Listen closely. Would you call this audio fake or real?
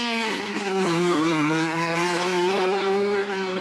fake